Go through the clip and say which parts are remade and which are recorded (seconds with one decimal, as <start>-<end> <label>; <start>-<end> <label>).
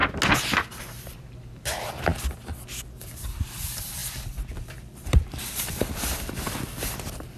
0.0-0.8 recorded; 0.8-7.4 remade